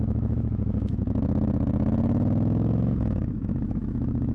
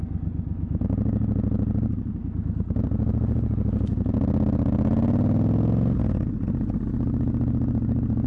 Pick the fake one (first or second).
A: first